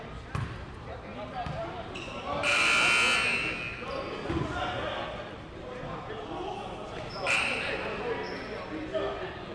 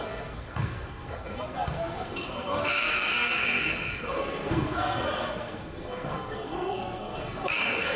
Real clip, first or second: first